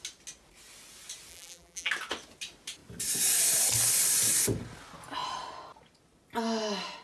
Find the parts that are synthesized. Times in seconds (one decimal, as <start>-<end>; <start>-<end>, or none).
1.3-1.9